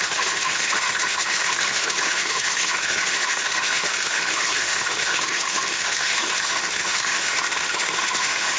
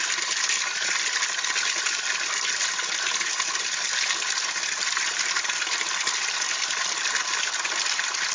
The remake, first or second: first